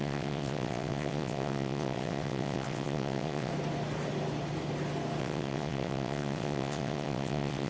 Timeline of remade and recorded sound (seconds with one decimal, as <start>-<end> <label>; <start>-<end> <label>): 0.0-3.5 remade; 3.5-5.2 recorded; 5.2-7.7 remade

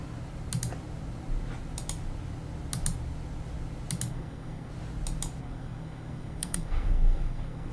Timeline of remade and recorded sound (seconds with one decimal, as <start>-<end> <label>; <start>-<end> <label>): 0.0-4.1 recorded; 4.1-4.7 remade; 4.7-5.4 recorded; 5.4-7.7 remade

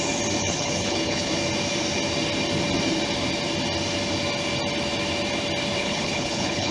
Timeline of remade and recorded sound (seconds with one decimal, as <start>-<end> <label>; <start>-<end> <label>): 0.0-0.4 recorded; 0.4-1.3 remade; 1.3-5.8 recorded; 5.8-6.7 remade

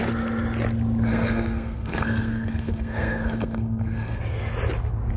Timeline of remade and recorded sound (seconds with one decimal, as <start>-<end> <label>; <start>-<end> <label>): 0.0-1.1 recorded; 1.1-4.2 remade; 4.2-5.2 recorded

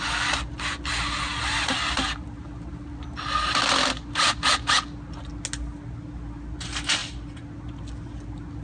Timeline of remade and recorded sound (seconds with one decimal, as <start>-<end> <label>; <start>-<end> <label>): 0.0-8.6 recorded